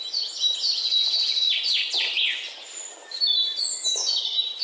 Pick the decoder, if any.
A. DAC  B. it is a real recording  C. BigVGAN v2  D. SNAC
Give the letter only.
B